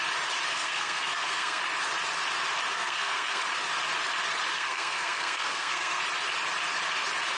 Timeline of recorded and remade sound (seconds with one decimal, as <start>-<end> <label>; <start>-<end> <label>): 0.0-0.5 recorded; 0.5-1.6 remade; 1.6-2.7 recorded; 2.7-3.4 remade; 3.4-4.5 recorded; 4.5-6.0 remade; 6.0-7.4 recorded